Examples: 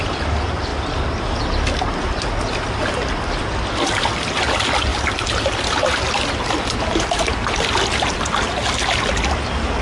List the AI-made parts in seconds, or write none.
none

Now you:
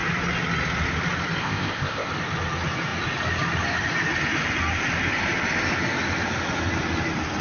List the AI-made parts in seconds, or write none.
1.4-2.1 (codec, ZipCodec)